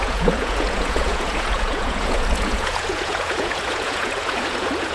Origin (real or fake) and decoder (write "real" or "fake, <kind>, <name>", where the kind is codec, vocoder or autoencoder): fake, vocoder, Vocos